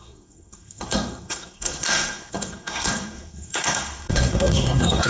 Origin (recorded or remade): remade